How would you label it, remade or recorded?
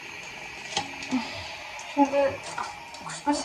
recorded